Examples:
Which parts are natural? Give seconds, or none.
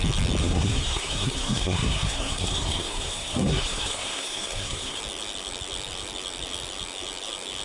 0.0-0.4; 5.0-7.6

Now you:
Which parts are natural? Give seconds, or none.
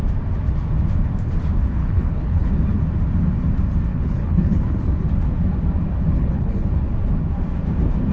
0.0-1.8; 2.5-3.9; 4.7-6.1; 6.8-8.1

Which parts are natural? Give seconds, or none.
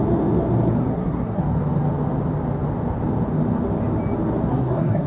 0.0-0.8; 1.4-4.5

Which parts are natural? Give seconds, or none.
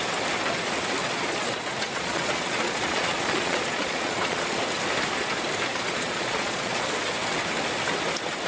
0.0-1.0; 4.6-5.7; 6.9-8.5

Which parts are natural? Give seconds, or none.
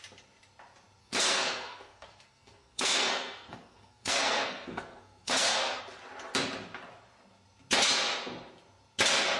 0.0-1.0; 5.8-9.4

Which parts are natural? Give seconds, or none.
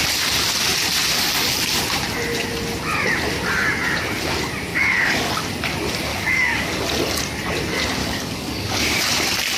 0.0-4.7; 5.3-6.1; 6.8-8.0; 9.0-9.6